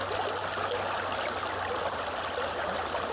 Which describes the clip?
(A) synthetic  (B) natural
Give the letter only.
B